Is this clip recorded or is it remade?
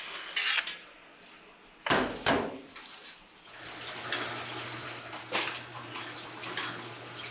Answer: recorded